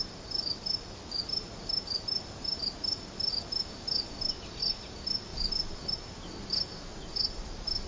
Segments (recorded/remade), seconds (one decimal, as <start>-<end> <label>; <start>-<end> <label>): 0.0-7.9 recorded